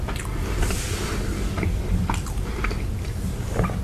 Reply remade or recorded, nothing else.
recorded